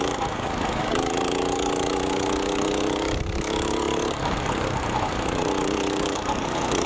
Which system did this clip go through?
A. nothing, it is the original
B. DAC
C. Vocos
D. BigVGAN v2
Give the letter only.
B